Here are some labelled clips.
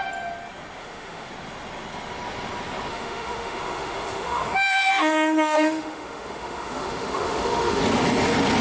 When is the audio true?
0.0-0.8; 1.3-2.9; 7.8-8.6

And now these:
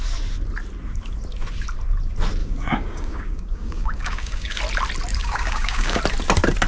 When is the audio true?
0.0-2.4; 4.6-5.1; 6.0-6.7

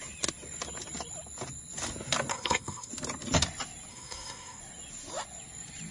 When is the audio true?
0.0-2.3; 2.9-3.9; 4.6-5.9